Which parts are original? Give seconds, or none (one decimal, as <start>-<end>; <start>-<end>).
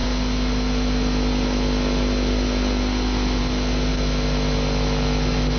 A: 0.0-5.6